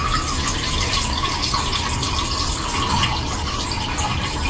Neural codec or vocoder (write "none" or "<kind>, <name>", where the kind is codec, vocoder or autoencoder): none